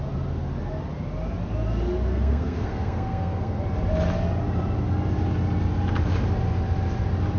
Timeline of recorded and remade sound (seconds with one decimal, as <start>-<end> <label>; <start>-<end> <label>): 0.0-2.1 recorded; 2.1-3.6 remade; 3.6-7.4 recorded